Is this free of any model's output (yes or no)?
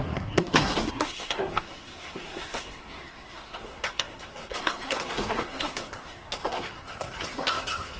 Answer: no